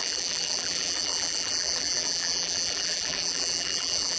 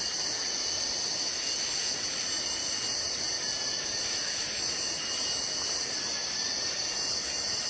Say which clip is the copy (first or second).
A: first